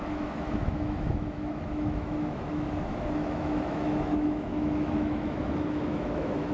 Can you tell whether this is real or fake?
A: fake